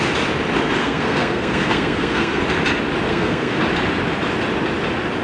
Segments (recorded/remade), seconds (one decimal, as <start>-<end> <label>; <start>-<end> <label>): 0.0-0.8 recorded; 0.8-2.4 remade; 2.4-3.1 recorded; 3.1-3.6 remade; 3.6-5.2 recorded